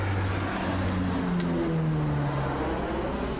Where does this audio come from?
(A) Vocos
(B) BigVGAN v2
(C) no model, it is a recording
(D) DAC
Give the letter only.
C